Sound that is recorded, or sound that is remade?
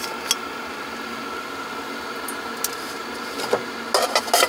recorded